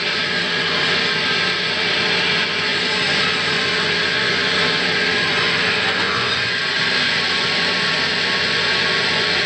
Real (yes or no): no